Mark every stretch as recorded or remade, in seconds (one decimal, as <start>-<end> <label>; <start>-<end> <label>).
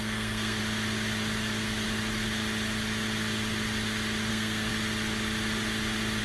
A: 0.0-0.6 remade; 0.6-4.3 recorded; 4.3-4.7 remade; 4.7-6.2 recorded